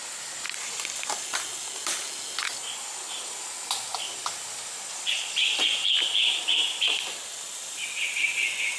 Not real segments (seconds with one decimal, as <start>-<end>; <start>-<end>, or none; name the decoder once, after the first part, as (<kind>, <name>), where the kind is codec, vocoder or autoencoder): none